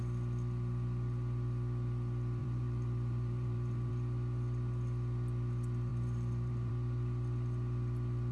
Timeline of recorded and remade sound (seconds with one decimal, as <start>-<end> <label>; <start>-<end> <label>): 0.0-2.4 recorded; 2.4-3.9 remade; 3.9-5.9 recorded; 5.9-6.7 remade; 6.7-8.3 recorded

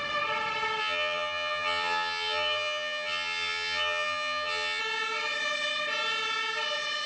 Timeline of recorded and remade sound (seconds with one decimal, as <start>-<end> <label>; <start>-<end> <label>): 0.0-0.8 recorded; 0.8-4.8 remade; 4.8-7.1 recorded

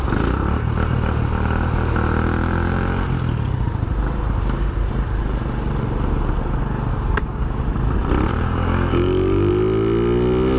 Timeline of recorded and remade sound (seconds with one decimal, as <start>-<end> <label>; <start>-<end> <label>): 0.0-6.9 recorded; 6.9-7.6 remade; 7.6-8.3 recorded; 8.3-9.5 remade; 9.5-10.6 recorded